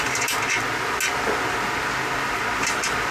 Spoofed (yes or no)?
no